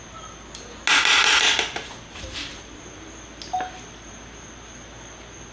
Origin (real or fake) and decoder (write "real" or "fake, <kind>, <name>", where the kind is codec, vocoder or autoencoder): real